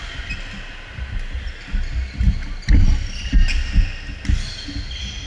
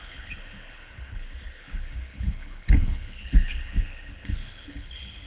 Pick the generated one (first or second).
second